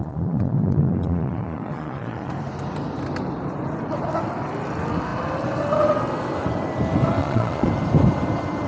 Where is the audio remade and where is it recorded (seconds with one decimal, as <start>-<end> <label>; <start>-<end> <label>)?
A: 0.0-2.3 remade; 2.3-7.2 recorded; 7.2-7.7 remade; 7.7-8.7 recorded